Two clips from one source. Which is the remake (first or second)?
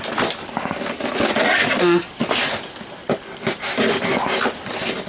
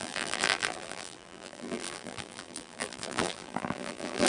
second